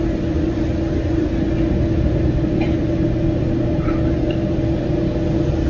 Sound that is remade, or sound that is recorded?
recorded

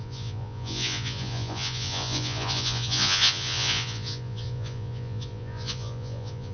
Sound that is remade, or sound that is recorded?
remade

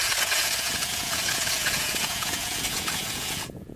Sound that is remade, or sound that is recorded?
remade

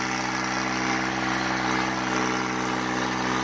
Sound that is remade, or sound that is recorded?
recorded